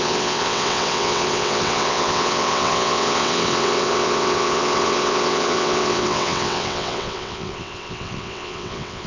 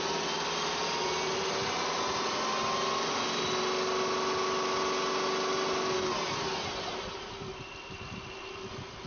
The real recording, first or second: second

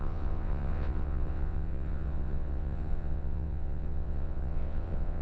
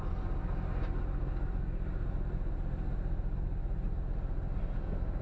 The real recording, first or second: second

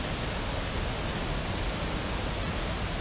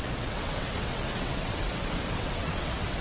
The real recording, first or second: first